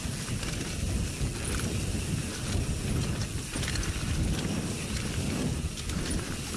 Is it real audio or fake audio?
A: real